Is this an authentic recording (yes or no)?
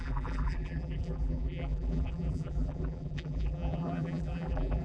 no